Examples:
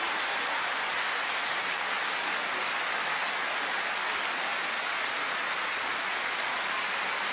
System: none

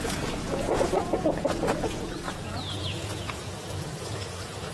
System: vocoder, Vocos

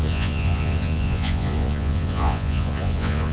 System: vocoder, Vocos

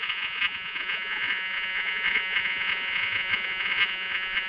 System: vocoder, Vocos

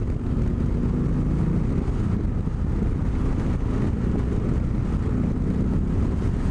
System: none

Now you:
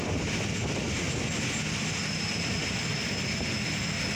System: none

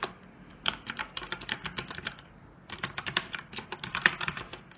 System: none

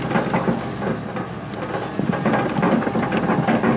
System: none